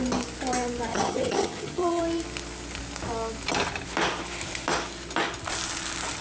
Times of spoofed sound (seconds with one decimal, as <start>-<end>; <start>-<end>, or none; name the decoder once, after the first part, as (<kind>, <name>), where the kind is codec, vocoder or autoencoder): 0.9-2.0 (vocoder, HiFi-GAN)